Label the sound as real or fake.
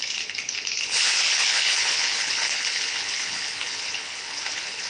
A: fake